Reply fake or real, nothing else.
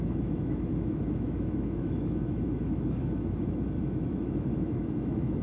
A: fake